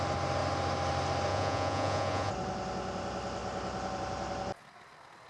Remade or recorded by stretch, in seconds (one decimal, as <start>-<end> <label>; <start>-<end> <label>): 0.0-1.3 recorded; 1.3-2.3 remade; 2.3-5.3 recorded

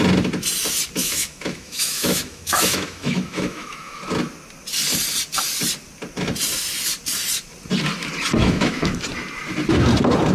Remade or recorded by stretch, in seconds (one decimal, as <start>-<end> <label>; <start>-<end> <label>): 0.0-1.0 recorded; 1.0-4.0 remade; 4.0-8.4 recorded; 8.4-9.0 remade; 9.0-10.3 recorded

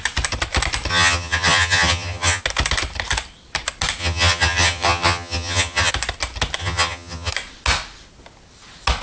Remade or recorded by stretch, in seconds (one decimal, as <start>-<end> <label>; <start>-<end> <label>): 0.0-0.9 recorded; 0.9-2.4 remade; 2.4-4.0 recorded; 4.0-5.9 remade; 5.9-6.6 recorded; 6.6-7.3 remade; 7.3-9.0 recorded

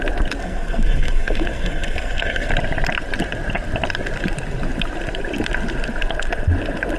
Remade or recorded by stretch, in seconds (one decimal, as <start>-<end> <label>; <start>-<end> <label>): 0.0-0.4 recorded; 0.4-2.5 remade; 2.5-7.0 recorded

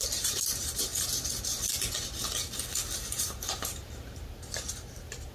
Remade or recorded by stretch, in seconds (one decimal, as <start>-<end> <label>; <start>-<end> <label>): 0.0-0.9 remade; 0.9-3.0 recorded; 3.0-5.3 remade

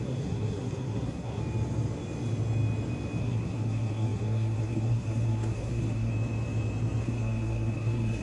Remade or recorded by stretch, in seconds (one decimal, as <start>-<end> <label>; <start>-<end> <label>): 0.0-1.4 remade; 1.4-3.2 recorded; 3.2-6.1 remade; 6.1-7.0 recorded; 7.0-8.2 remade